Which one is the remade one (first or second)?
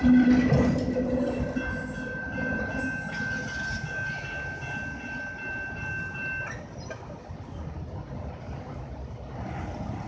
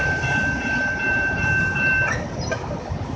second